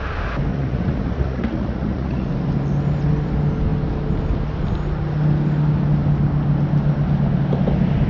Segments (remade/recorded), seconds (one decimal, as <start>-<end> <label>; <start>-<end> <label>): 0.0-0.5 recorded; 0.5-2.3 remade; 2.3-8.1 recorded